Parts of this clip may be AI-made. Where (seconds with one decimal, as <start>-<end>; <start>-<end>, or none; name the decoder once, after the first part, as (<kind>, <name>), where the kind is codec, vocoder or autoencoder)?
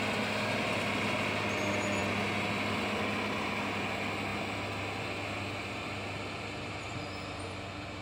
none